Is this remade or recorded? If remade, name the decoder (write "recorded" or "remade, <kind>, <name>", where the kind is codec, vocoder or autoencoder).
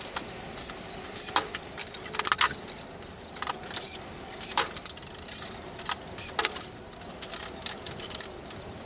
recorded